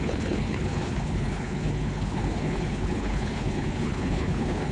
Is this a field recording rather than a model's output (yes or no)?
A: no